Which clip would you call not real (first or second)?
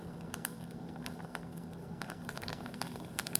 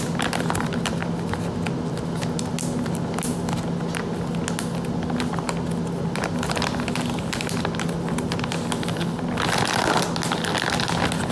first